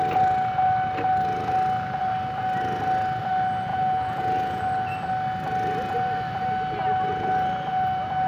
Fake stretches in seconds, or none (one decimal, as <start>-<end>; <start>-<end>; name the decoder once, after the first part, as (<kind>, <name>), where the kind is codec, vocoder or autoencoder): 3.7-4.6 (vocoder, Vocos)